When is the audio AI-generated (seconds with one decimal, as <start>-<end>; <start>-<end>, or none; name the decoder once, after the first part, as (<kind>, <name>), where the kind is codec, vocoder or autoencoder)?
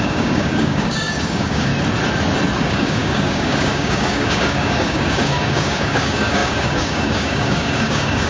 0.0-1.7 (codec, DAC); 2.6-8.3